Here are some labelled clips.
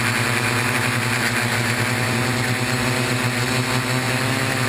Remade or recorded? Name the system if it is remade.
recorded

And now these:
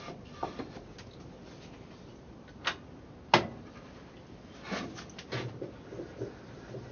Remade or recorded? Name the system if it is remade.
recorded